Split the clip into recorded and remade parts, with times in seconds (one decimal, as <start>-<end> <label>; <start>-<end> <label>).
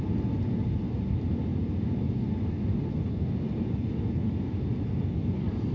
0.0-1.5 remade; 1.5-4.9 recorded; 4.9-5.7 remade